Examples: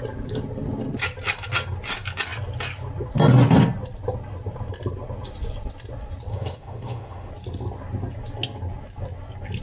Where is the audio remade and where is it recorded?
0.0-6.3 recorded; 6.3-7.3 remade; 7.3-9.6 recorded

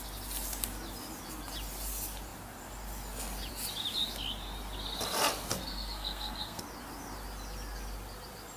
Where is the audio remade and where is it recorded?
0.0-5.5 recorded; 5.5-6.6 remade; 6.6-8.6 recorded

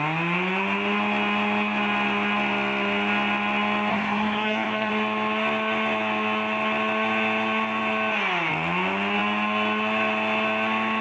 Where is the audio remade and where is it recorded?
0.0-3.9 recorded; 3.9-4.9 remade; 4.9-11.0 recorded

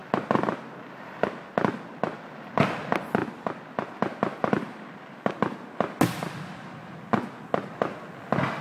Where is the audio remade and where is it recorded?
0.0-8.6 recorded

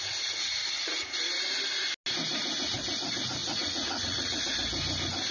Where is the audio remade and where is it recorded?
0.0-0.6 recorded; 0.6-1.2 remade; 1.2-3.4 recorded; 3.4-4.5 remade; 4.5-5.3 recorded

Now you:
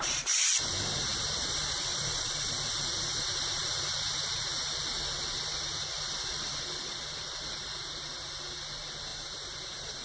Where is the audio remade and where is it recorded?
0.0-1.9 recorded; 1.9-2.5 remade; 2.5-9.1 recorded; 9.1-10.0 remade